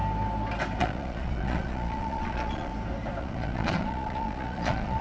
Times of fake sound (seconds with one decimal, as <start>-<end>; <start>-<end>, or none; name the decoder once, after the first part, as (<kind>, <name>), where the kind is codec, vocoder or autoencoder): 0.8-2.7 (vocoder, Vocos); 3.2-5.0